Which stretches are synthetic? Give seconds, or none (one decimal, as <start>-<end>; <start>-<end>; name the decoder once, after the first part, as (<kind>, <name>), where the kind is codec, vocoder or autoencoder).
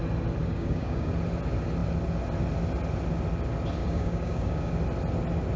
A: 0.4-1.1 (codec, DAC); 3.8-4.7